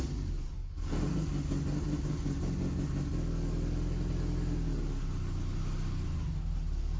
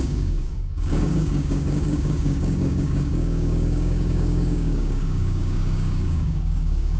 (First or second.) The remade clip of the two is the second